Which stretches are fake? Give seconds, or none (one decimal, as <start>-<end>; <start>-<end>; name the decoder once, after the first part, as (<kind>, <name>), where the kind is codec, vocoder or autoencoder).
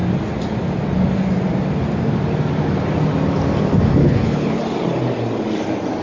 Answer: 4.0-4.6 (codec, HILCodec)